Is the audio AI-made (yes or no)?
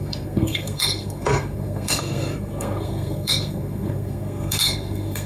yes